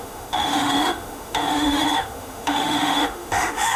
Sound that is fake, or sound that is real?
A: fake